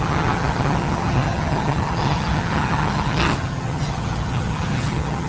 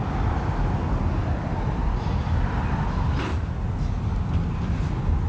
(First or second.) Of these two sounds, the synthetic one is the first